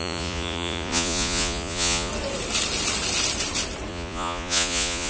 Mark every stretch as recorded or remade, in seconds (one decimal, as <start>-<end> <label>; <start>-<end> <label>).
0.0-2.1 remade; 2.1-3.9 recorded; 3.9-5.1 remade